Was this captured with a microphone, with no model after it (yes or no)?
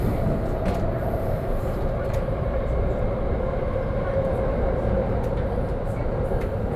no